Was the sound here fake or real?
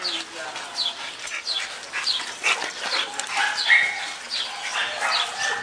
real